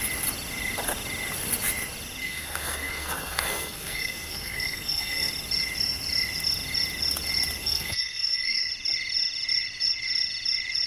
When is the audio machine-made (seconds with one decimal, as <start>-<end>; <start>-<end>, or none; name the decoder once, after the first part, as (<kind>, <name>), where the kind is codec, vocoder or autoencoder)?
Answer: 2.2-5.3 (codec, SNAC); 7.6-8.6